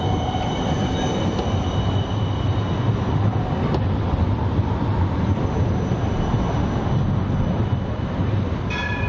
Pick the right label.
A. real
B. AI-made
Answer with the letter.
A